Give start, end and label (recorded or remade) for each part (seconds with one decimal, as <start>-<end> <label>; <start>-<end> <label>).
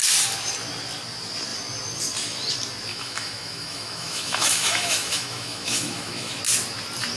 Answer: 0.0-2.9 recorded; 2.9-6.4 remade; 6.4-7.2 recorded